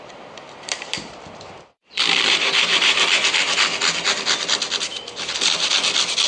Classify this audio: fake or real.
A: fake